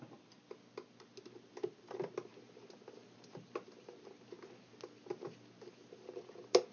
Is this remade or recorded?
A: recorded